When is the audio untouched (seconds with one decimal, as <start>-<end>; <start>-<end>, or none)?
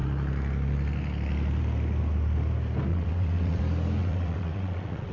0.0-2.9; 3.6-4.0